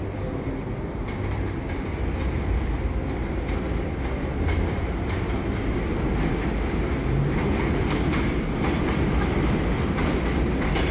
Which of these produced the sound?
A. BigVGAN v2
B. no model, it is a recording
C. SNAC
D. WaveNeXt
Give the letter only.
B